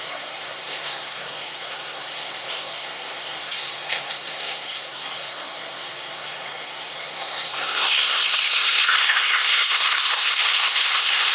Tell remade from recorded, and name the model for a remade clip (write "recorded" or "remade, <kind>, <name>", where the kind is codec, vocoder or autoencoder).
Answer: remade, codec, SNAC